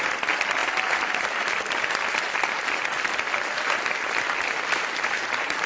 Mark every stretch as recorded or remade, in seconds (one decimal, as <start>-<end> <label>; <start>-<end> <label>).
0.0-5.7 recorded